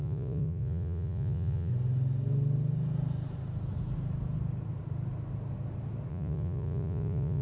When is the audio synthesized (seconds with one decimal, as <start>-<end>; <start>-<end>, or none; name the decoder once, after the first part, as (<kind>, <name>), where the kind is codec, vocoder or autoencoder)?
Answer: 0.0-1.7 (vocoder, Vocos); 6.1-7.4